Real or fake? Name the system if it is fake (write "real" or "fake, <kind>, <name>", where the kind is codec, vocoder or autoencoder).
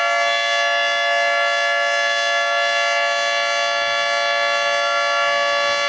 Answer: real